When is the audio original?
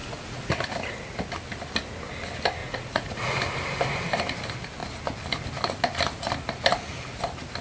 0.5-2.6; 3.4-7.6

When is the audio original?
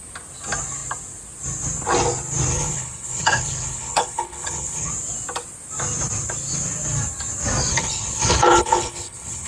0.0-2.5; 4.9-7.7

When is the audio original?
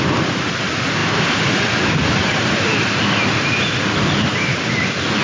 0.0-5.2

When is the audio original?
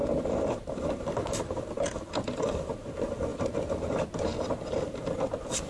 0.0-5.7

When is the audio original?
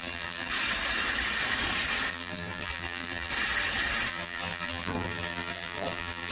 0.5-2.1; 3.3-4.1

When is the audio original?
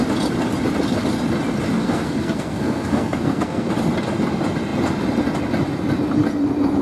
0.0-1.8; 3.7-6.8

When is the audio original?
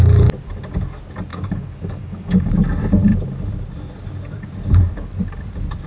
0.0-1.3; 2.5-5.9